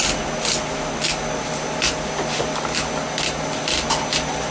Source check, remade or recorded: recorded